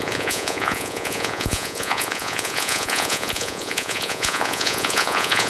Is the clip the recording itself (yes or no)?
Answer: no